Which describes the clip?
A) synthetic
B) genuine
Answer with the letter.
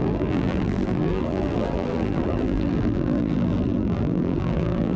A